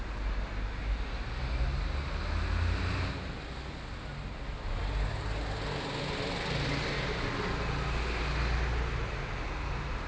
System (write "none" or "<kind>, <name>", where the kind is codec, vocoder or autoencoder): none